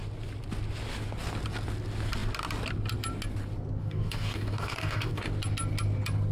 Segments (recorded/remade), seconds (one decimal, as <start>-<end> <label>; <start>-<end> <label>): 0.0-3.8 recorded; 3.8-5.3 remade; 5.3-6.3 recorded